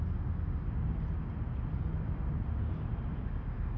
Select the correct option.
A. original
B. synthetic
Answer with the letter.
A